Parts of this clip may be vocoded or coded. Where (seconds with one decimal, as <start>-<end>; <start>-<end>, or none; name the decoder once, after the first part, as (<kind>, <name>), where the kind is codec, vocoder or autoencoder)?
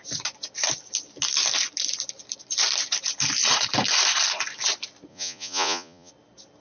5.1-6.1 (vocoder, Vocos)